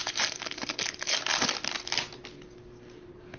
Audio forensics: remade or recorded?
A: recorded